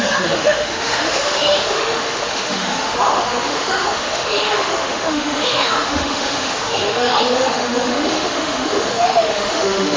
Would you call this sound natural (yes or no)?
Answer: no